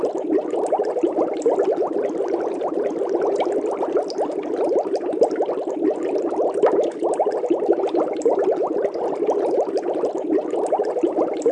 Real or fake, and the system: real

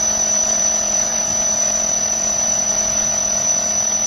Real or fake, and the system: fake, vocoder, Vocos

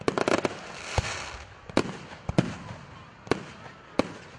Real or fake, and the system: real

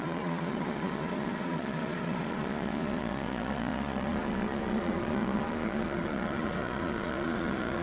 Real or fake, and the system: fake, vocoder, Vocos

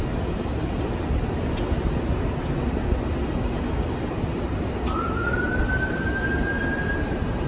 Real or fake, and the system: real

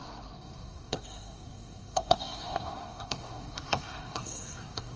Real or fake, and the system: fake, codec, SNAC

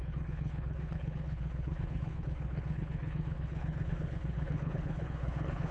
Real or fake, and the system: fake, codec, HILCodec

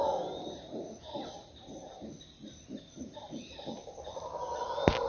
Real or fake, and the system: real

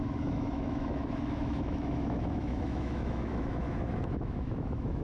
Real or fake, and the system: fake, autoencoder, DAC-VAE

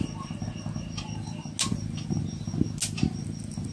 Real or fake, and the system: real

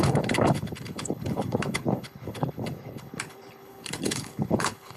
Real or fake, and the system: fake, codec, HILCodec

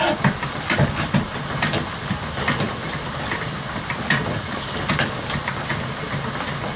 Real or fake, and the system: real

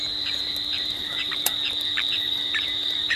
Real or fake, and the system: fake, vocoder, BigVGAN v2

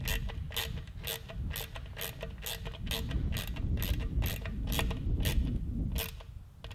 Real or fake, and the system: real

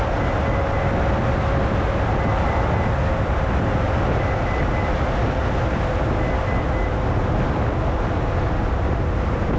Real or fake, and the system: real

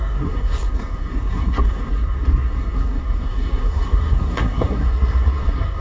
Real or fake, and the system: fake, codec, SNAC